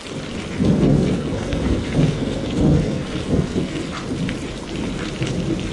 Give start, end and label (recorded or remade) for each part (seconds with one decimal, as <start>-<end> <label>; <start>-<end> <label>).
0.0-0.6 recorded; 0.6-4.0 remade; 4.0-5.7 recorded